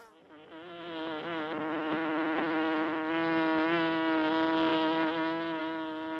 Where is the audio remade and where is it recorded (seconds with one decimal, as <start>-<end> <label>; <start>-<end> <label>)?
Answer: 0.0-6.2 recorded